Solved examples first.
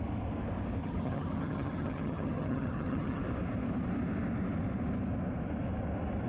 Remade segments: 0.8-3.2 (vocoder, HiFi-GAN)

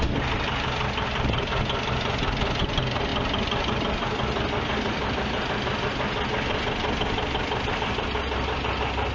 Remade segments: none

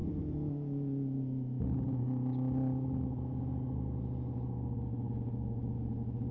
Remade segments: none